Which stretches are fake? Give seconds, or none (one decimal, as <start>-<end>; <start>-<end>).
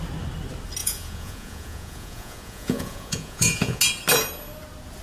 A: 0.8-3.8